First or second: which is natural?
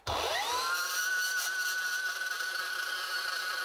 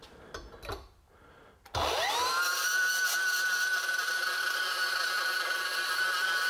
second